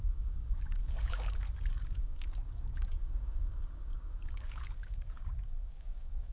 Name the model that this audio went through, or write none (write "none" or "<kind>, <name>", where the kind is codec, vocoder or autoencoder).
codec, DAC